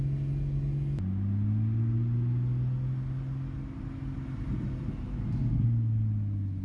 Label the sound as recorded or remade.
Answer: recorded